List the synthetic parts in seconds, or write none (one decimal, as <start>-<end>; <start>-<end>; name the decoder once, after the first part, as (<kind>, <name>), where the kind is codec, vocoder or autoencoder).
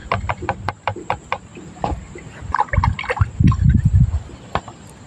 none